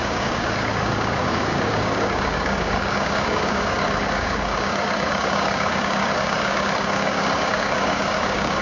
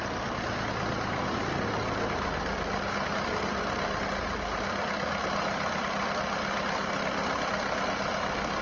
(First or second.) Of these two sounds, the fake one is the first